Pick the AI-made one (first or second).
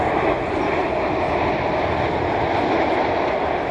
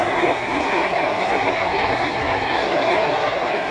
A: second